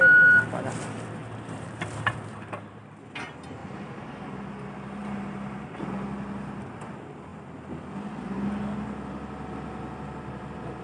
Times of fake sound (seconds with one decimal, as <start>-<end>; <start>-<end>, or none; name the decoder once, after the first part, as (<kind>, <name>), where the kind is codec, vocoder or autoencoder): 1.2-2.8 (vocoder, BigVGAN v2); 3.6-4.3; 5.0-5.8